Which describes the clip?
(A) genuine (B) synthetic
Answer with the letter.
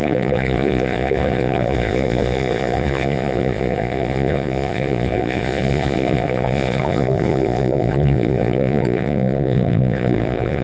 B